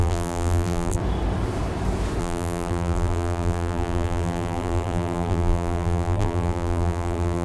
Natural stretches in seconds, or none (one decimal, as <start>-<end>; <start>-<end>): 1.0-2.2